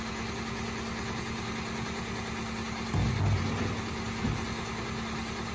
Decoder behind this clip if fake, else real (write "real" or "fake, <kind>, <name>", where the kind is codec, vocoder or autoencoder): real